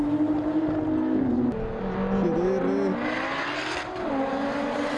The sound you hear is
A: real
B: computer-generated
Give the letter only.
A